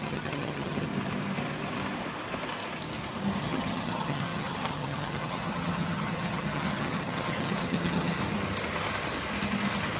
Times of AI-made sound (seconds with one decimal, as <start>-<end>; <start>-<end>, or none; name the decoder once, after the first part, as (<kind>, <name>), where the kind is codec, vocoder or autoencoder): 0.0-0.9 (vocoder, HiFi-GAN); 3.4-8.2